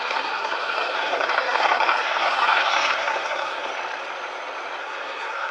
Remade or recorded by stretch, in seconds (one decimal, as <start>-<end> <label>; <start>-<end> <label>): 0.0-3.7 remade; 3.7-4.8 recorded; 4.8-5.5 remade